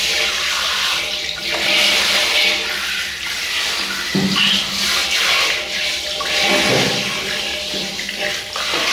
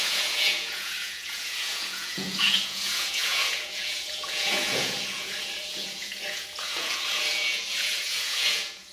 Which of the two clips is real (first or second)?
first